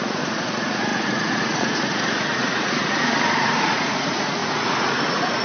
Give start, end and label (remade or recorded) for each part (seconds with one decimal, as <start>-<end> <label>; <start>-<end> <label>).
0.0-5.4 remade